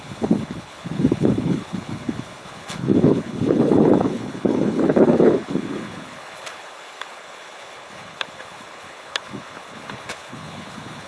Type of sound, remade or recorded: remade